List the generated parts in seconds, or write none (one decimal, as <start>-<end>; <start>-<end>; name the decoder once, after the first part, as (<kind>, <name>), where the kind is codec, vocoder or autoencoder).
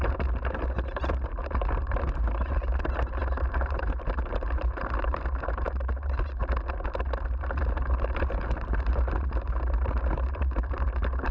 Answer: 0.0-6.4 (vocoder, BigVGAN v2); 7.4-11.3